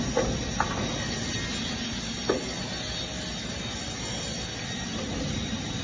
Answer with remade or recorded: recorded